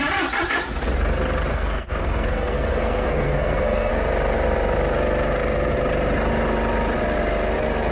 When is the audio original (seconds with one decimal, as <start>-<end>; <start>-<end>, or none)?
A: 0.0-1.5; 3.9-7.9